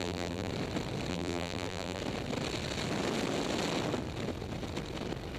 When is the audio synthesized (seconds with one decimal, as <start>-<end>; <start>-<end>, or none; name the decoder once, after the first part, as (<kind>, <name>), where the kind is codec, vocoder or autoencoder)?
0.0-0.5 (vocoder, BigVGAN v2); 1.1-2.0